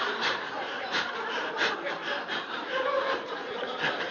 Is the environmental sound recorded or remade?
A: remade